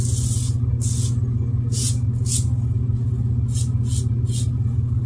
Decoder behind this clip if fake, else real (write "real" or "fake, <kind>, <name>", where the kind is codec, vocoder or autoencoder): real